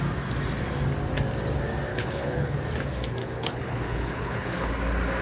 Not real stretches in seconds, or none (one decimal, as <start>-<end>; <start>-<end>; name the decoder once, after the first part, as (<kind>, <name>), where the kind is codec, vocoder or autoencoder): 1.9-2.6 (codec, HILCodec); 3.2-4.7